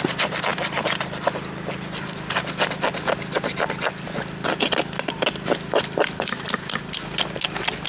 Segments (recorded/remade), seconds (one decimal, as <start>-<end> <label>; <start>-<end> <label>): 0.0-7.9 recorded